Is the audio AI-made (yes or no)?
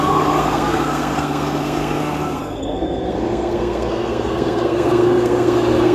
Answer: yes